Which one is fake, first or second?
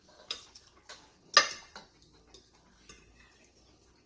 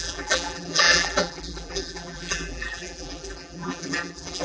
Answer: second